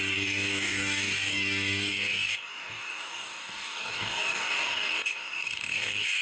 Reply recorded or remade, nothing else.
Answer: remade